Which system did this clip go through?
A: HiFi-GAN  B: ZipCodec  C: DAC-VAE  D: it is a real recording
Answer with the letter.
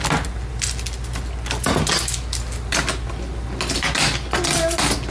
D